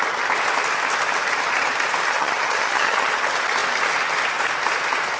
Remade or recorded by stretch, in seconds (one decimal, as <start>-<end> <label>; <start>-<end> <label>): 0.0-2.1 recorded; 2.1-3.1 remade; 3.1-5.2 recorded